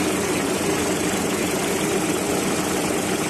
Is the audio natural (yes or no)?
yes